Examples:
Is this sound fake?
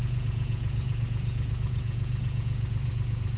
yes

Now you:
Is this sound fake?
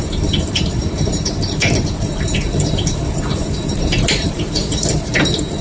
yes